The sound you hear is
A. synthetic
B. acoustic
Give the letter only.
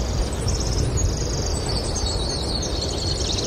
B